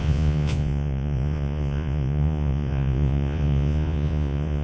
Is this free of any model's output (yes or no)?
no